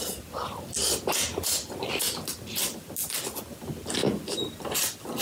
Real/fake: real